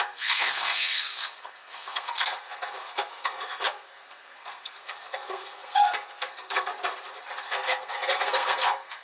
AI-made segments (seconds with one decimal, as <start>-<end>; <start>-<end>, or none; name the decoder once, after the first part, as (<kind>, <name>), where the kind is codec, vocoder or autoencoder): 0.0-6.7 (codec, SNAC); 7.4-9.0